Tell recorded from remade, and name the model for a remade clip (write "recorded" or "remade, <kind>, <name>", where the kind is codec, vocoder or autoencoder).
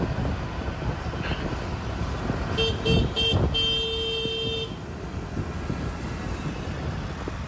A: recorded